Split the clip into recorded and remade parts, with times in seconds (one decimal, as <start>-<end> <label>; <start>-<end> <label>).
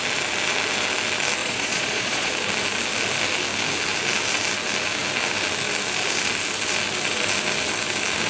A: 0.0-1.4 recorded; 1.4-2.3 remade; 2.3-8.3 recorded